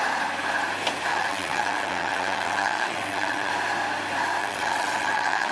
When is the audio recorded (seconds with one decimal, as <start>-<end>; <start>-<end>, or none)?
0.0-1.1; 3.5-4.4